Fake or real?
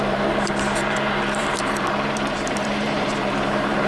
fake